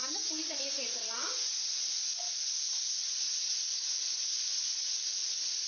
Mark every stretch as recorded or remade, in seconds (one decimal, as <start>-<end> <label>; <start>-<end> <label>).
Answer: 0.0-1.6 remade; 1.6-5.7 recorded